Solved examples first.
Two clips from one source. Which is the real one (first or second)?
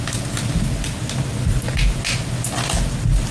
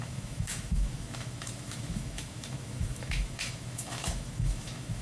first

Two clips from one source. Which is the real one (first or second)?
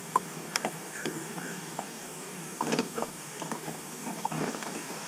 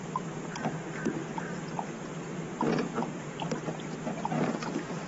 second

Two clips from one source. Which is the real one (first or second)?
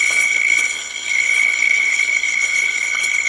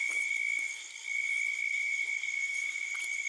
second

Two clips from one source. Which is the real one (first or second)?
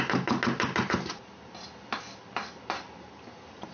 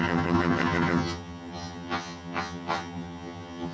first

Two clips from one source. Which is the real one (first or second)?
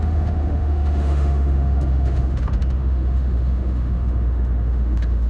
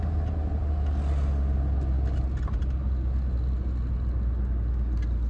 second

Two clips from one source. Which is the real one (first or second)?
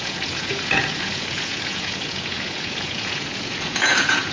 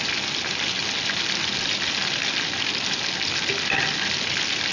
second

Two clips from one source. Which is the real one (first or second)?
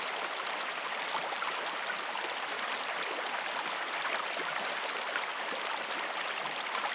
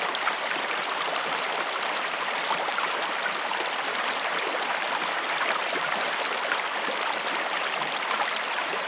first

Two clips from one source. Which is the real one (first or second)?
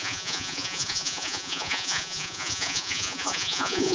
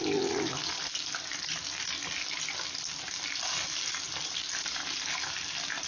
second